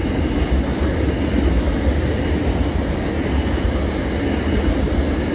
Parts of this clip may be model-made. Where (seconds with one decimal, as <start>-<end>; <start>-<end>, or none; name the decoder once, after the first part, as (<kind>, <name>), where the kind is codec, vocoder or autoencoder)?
none